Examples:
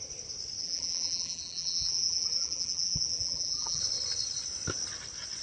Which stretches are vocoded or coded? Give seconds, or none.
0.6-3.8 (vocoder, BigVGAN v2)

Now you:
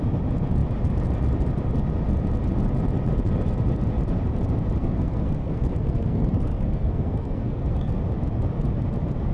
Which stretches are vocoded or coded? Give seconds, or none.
4.8-7.9 (codec, SNAC)